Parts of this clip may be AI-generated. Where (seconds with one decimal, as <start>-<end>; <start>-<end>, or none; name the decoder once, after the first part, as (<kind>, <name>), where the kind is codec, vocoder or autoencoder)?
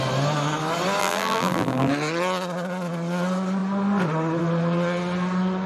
1.0-1.9 (vocoder, BigVGAN v2)